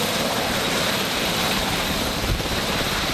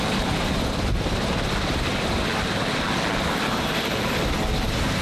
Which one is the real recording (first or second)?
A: second